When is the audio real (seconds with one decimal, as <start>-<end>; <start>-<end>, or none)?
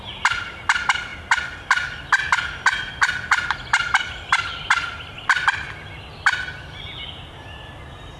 0.0-8.2